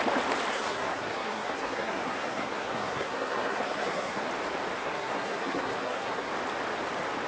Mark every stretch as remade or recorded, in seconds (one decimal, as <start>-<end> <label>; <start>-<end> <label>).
0.0-0.5 recorded; 0.5-4.3 remade; 4.3-4.8 recorded; 4.8-6.3 remade; 6.3-7.3 recorded